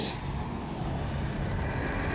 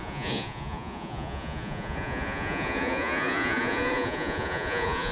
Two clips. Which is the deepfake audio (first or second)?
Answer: second